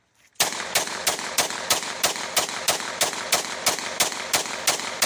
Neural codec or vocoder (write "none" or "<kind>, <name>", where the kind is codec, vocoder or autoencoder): none